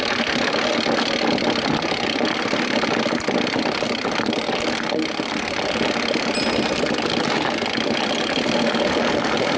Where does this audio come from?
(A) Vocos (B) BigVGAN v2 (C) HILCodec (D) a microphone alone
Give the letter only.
D